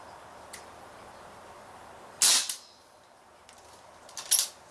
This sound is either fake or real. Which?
real